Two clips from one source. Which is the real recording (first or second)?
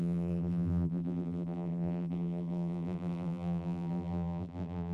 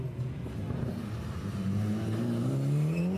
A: second